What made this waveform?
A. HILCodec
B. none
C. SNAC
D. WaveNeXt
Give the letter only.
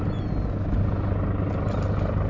B